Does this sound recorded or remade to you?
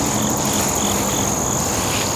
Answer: recorded